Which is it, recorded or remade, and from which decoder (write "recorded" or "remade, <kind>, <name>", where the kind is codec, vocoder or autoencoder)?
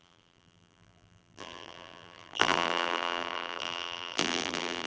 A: remade, vocoder, BigVGAN v2